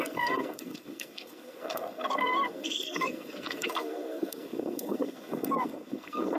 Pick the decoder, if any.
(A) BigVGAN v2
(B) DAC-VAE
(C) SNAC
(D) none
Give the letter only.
C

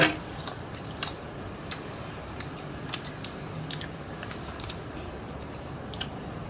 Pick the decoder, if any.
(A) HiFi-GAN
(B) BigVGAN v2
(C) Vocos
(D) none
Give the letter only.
B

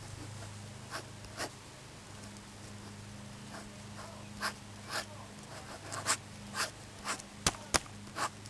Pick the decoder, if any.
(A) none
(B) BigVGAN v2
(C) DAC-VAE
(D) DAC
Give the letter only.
A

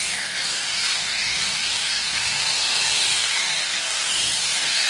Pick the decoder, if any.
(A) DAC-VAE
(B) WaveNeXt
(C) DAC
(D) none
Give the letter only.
C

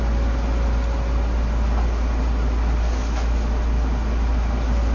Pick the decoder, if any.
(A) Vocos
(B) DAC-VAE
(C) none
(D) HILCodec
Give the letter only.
C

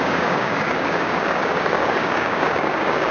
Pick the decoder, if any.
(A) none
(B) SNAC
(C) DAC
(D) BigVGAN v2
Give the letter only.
C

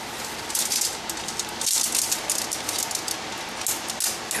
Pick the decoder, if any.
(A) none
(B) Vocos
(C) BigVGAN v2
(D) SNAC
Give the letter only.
A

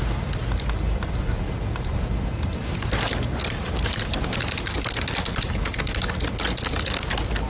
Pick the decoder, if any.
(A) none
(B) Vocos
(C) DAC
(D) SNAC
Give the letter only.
A